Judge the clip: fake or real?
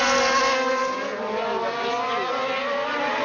real